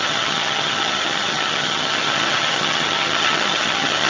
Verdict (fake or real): fake